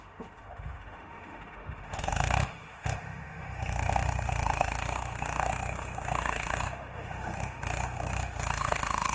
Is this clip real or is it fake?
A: fake